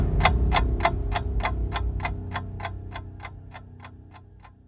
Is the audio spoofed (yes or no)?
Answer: no